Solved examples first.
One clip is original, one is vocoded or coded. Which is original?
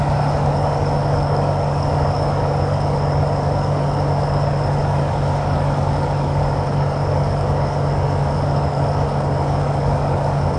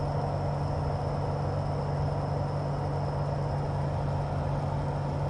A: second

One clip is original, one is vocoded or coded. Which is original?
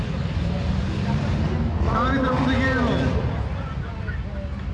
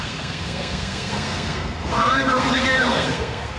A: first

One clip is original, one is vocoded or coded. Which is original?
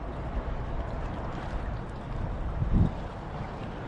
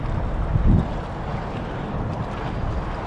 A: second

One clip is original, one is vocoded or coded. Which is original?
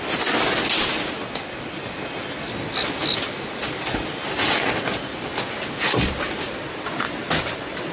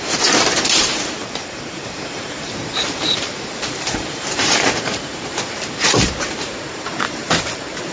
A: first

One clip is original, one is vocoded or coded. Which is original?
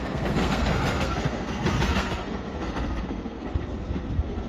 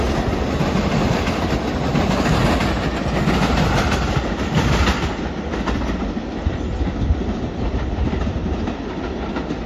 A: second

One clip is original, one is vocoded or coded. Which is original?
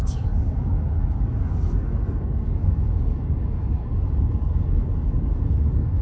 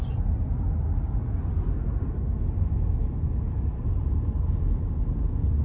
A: second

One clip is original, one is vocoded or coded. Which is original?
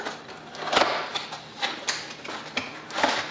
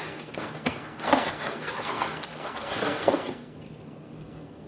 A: first